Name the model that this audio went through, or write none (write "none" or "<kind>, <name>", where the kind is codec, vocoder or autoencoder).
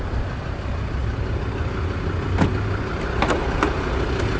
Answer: none